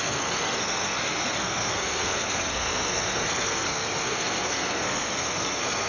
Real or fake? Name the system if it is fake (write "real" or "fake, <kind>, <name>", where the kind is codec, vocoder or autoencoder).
fake, codec, SNAC